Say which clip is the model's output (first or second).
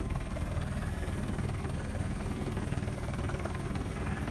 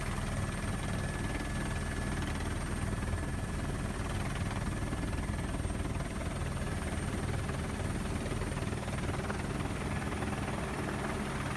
first